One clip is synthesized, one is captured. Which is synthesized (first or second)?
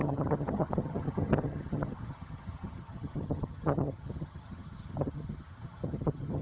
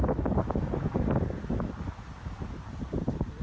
first